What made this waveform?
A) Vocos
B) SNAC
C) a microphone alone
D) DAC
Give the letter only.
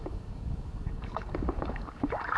D